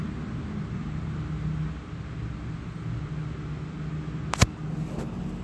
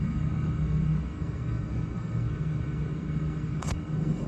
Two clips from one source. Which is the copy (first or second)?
second